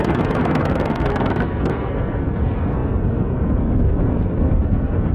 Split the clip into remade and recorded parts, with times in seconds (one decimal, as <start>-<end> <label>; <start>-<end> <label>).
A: 0.0-5.1 remade